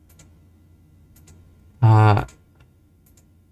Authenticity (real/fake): real